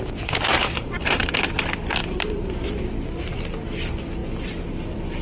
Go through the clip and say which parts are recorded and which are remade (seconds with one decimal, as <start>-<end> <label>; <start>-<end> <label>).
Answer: 0.0-0.6 recorded; 0.6-1.2 remade; 1.2-2.0 recorded; 2.0-2.7 remade; 2.7-5.2 recorded